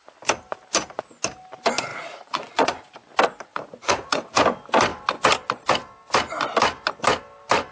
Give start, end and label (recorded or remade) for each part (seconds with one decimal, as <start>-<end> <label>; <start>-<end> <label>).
0.0-1.9 recorded; 1.9-2.9 remade; 2.9-3.5 recorded; 3.5-4.4 remade; 4.4-7.7 recorded